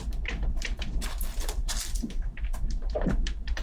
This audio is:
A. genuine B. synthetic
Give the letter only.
B